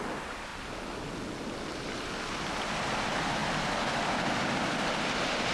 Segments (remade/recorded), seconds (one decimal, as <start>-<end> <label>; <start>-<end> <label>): 0.0-5.5 recorded